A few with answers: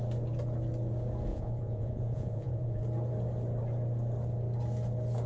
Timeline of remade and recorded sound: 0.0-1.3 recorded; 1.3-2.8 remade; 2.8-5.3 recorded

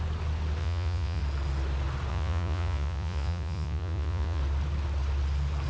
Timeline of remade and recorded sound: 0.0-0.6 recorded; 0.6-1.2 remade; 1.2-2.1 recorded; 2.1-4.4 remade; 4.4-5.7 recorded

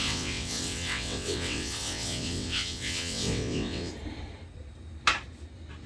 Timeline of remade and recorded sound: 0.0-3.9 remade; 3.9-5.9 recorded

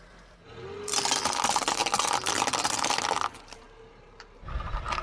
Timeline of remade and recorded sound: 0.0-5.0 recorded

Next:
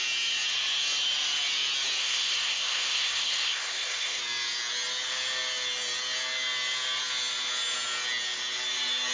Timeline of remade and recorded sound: 0.0-2.0 recorded; 2.0-4.2 remade; 4.2-9.1 recorded